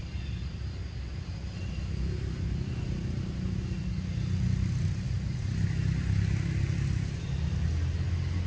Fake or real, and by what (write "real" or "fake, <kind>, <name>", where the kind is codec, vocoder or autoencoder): real